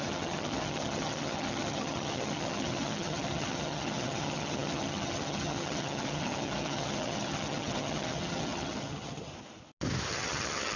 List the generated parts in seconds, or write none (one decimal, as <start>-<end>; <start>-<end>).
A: 0.0-9.3; 10.1-10.8